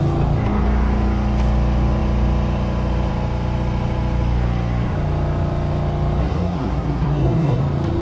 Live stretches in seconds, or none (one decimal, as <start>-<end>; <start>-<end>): 0.0-6.2; 7.6-8.0